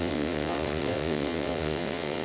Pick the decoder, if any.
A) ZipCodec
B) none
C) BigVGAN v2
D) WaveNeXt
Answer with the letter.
D